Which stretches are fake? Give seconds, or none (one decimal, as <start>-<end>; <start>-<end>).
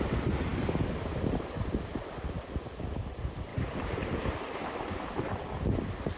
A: 0.0-6.2